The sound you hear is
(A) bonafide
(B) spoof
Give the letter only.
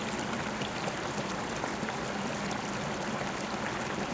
A